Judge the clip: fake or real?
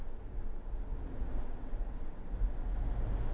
real